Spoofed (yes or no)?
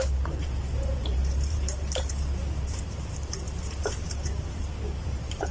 yes